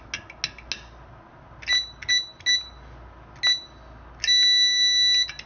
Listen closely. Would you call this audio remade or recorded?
recorded